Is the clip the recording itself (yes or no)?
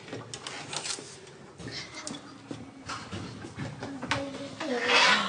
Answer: yes